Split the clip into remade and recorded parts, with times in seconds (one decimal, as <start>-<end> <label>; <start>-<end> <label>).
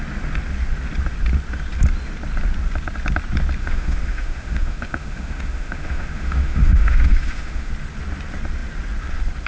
0.0-3.6 recorded; 3.6-7.7 remade; 7.7-9.5 recorded